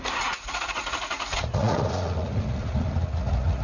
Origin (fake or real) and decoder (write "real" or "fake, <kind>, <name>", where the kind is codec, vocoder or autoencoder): fake, vocoder, Vocos